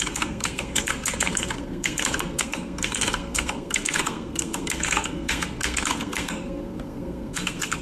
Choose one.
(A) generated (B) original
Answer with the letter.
A